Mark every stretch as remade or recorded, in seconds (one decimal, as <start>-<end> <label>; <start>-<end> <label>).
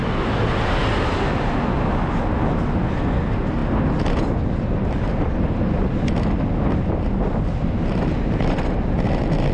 0.0-9.5 recorded